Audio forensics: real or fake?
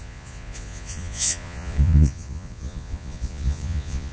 fake